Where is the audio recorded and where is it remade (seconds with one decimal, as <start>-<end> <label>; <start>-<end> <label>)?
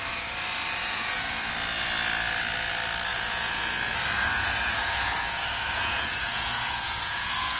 0.0-0.8 recorded; 0.8-1.5 remade; 1.5-3.1 recorded; 3.1-3.9 remade; 3.9-4.3 recorded; 4.3-7.6 remade